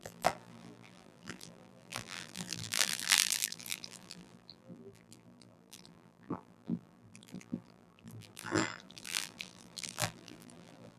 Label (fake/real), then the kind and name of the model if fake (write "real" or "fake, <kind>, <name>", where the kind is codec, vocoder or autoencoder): fake, vocoder, BigVGAN v2